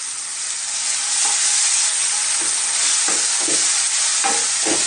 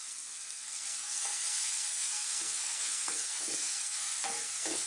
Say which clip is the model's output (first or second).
second